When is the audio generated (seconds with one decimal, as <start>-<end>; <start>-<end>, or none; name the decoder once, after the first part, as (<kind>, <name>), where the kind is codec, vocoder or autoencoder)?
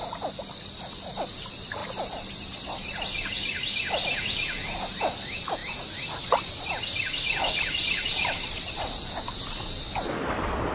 none